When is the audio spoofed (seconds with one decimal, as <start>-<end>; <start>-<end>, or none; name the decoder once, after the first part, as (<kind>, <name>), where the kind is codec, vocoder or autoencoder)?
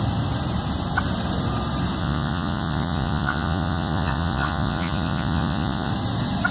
2.0-5.9 (vocoder, Vocos)